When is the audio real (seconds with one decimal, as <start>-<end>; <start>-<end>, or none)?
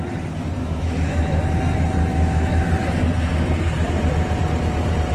0.0-0.6; 1.4-2.1; 2.7-5.1